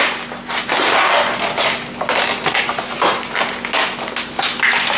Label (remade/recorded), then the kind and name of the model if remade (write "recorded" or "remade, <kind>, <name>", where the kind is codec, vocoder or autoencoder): recorded